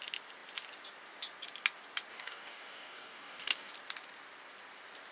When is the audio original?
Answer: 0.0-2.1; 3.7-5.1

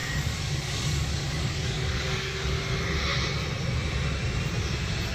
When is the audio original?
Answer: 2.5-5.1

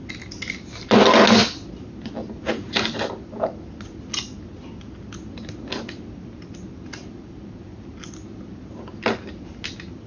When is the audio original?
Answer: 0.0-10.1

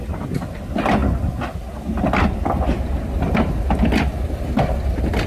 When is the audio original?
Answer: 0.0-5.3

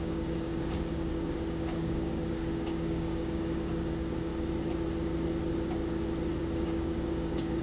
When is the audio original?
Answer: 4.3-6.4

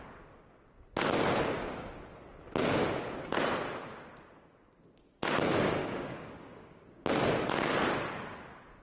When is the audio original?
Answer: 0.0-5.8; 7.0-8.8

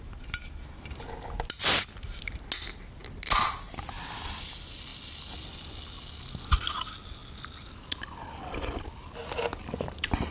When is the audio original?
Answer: 0.0-10.3